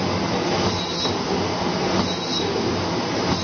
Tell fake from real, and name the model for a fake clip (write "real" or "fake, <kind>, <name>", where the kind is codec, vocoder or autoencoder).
real